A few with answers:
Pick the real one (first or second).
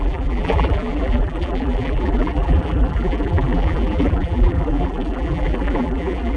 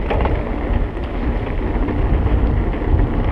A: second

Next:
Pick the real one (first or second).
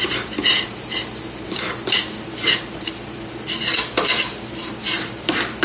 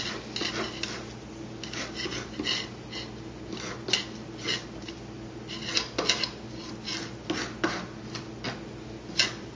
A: second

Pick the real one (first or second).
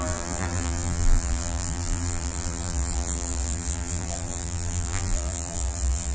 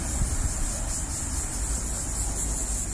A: second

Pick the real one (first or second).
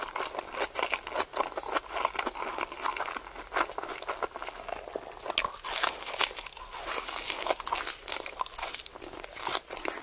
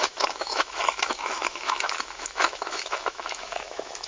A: first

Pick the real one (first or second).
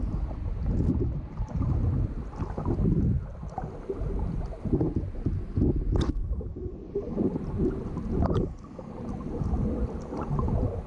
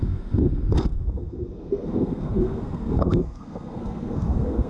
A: first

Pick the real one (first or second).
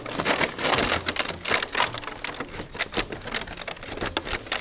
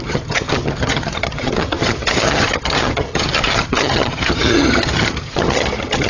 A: first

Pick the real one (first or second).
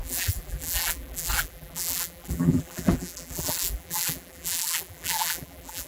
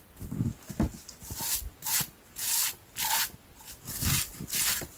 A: second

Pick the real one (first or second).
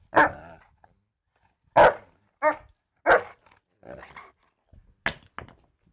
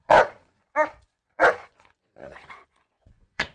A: first